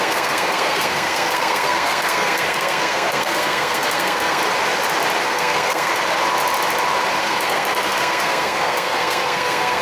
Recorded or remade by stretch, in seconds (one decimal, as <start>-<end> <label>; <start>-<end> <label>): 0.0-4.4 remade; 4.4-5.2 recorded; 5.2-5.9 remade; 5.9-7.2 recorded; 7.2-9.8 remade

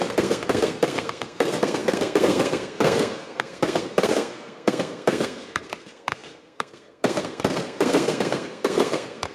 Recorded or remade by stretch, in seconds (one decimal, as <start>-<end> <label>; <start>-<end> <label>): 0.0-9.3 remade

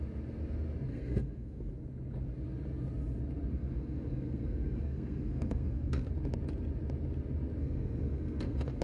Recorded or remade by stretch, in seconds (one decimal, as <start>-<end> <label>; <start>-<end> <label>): 0.0-0.9 recorded; 0.9-1.7 remade; 1.7-3.5 recorded; 3.5-6.1 remade; 6.1-7.6 recorded; 7.6-8.8 remade

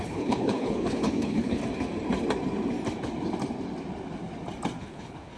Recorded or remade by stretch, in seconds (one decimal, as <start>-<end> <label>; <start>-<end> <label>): 0.0-1.6 remade; 1.6-4.8 recorded; 4.8-5.4 remade

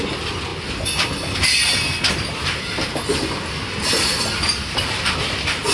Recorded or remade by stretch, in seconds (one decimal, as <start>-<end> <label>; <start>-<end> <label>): 0.0-5.7 recorded

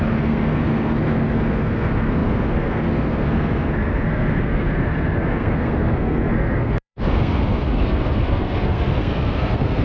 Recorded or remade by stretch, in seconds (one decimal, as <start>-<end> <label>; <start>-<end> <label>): 0.0-9.8 remade

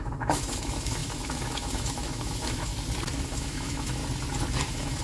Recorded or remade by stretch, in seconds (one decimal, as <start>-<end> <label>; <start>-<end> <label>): 0.0-2.7 remade; 2.7-3.2 recorded; 3.2-4.0 remade; 4.0-4.6 recorded; 4.6-5.0 remade